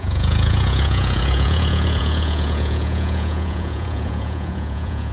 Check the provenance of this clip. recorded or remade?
remade